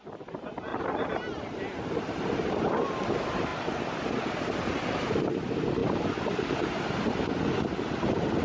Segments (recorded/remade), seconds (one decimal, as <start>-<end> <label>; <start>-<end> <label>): 0.0-0.7 recorded; 0.7-1.4 remade; 1.4-5.8 recorded; 5.8-7.3 remade; 7.3-8.4 recorded